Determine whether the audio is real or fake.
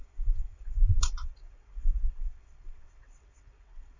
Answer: fake